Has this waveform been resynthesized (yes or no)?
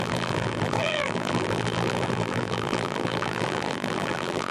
yes